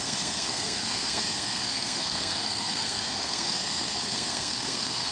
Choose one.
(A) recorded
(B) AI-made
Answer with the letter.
B